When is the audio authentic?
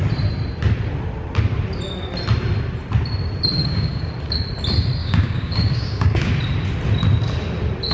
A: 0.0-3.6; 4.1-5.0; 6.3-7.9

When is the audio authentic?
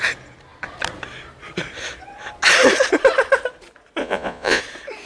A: 0.0-4.0; 4.6-5.1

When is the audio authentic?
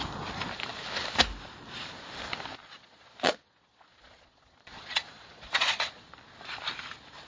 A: 0.0-2.6; 6.1-7.3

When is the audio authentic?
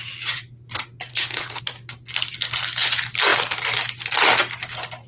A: 0.0-1.1; 1.6-5.1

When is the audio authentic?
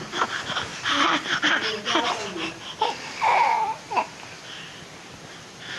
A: 0.0-5.8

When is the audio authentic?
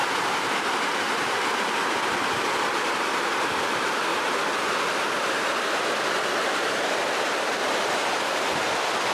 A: 3.1-7.6; 8.7-9.1